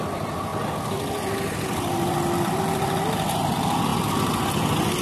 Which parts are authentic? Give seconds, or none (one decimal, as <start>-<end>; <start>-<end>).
0.0-5.0